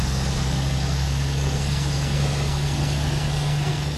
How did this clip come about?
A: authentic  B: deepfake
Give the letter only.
B